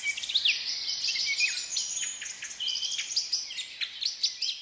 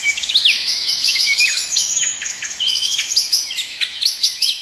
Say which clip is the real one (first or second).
first